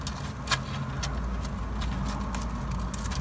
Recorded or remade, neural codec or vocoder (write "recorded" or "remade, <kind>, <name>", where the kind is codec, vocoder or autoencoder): recorded